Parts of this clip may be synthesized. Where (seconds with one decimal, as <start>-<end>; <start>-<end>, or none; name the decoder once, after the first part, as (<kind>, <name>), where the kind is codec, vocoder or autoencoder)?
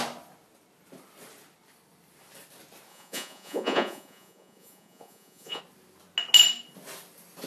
2.9-5.6 (vocoder, Vocos)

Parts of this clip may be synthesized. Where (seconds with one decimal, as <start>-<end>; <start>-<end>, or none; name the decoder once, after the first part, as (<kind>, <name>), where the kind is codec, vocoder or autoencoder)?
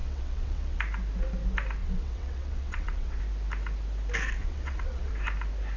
0.0-0.8 (vocoder, WaveNeXt); 1.8-3.2; 4.4-5.1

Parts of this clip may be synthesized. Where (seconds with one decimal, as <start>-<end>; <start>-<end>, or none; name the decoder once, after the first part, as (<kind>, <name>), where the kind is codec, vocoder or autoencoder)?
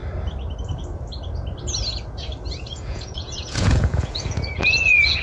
2.7-5.2 (vocoder, Vocos)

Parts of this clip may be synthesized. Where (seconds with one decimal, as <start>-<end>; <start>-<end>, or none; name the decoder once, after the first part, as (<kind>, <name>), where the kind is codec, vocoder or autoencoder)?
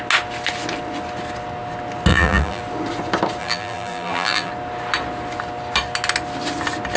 2.1-2.6 (vocoder, BigVGAN v2); 3.4-4.5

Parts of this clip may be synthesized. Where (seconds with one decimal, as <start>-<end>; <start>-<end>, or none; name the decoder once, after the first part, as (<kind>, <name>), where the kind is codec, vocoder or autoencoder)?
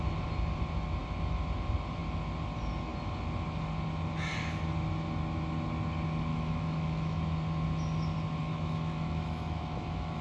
6.3-7.2 (autoencoder, DAC-VAE); 8.4-10.2